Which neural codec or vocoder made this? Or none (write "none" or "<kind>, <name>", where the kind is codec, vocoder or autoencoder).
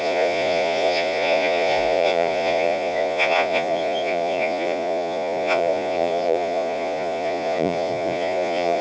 vocoder, Vocos